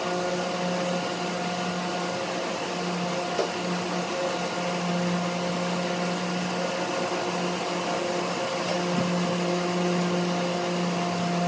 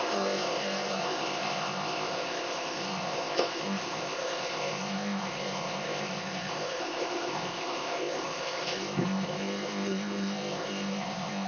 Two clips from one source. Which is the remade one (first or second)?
second